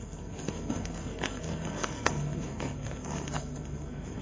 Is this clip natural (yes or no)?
no